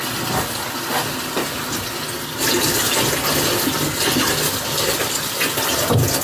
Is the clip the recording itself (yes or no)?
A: yes